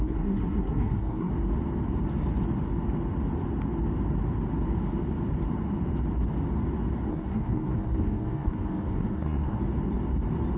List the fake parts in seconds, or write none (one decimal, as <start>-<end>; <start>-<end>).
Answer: 0.0-1.3; 7.1-9.6